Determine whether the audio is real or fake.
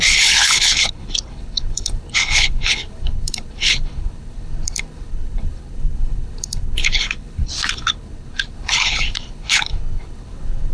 fake